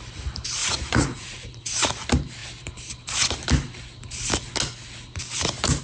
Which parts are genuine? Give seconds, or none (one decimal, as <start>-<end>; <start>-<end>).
0.0-0.6; 1.8-5.8